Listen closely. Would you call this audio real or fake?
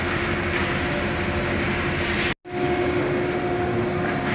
real